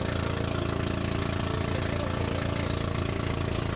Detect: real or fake real